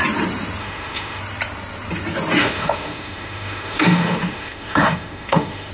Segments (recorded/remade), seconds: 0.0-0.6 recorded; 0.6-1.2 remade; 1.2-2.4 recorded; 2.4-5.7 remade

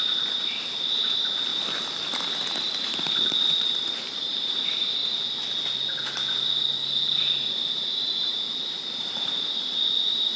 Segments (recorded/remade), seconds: 0.0-1.5 remade; 1.5-2.8 recorded; 2.8-5.0 remade; 5.0-7.5 recorded; 7.5-10.4 remade

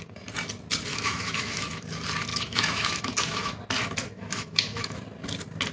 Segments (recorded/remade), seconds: 0.0-0.9 recorded; 0.9-1.8 remade; 1.8-2.3 recorded; 2.3-3.6 remade; 3.6-4.0 recorded; 4.0-5.0 remade; 5.0-5.7 recorded

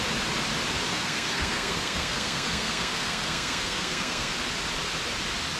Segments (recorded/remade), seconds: 0.0-0.9 recorded; 0.9-4.3 remade; 4.3-5.6 recorded

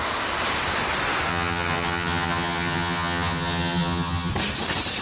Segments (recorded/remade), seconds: 0.0-1.3 recorded; 1.3-4.3 remade; 4.3-5.0 recorded

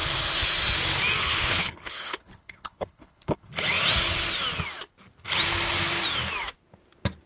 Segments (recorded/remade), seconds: 0.0-1.2 recorded; 1.2-3.5 remade; 3.5-7.3 recorded

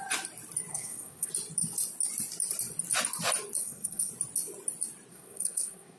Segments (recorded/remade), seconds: 0.0-0.7 recorded; 0.7-1.3 remade; 1.3-3.6 recorded; 3.6-4.1 remade; 4.1-5.1 recorded; 5.1-6.0 remade